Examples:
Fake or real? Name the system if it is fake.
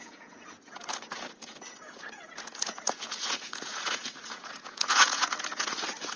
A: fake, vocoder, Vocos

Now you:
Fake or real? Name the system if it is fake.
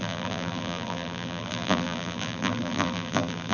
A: fake, vocoder, BigVGAN v2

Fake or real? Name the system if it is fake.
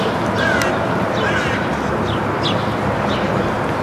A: real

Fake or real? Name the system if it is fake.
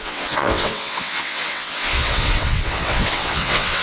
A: fake, vocoder, WaveNeXt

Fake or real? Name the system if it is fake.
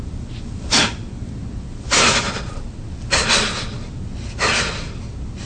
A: real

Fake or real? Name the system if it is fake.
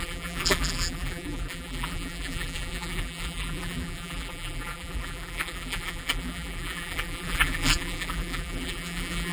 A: fake, vocoder, BigVGAN v2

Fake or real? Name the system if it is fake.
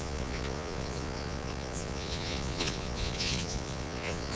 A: fake, vocoder, Vocos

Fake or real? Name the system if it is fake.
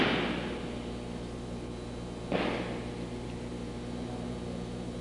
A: real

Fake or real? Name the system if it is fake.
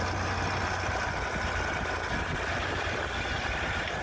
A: real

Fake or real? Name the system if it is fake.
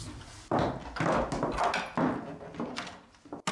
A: real